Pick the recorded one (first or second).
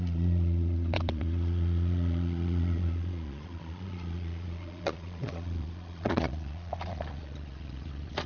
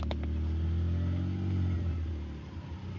second